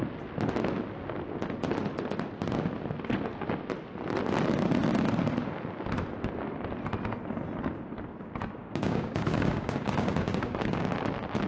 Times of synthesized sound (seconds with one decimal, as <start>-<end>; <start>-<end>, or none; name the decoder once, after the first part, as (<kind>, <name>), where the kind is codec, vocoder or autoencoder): 8.6-10.9 (codec, DAC)